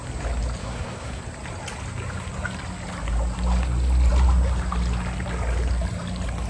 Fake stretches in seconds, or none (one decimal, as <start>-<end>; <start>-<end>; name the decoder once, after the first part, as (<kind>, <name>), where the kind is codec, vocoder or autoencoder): 0.6-1.2 (codec, SNAC)